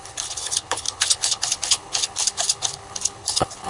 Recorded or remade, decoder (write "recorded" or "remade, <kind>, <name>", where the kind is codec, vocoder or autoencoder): remade, codec, HILCodec